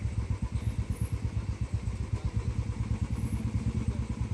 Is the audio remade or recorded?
recorded